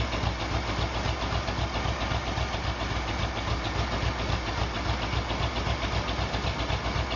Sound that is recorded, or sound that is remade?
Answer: recorded